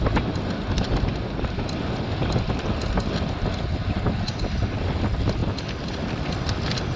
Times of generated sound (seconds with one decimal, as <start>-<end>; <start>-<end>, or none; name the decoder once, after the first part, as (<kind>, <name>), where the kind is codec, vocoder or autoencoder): none